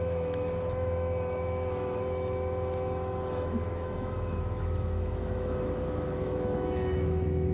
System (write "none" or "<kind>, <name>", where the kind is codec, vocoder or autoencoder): autoencoder, DAC-VAE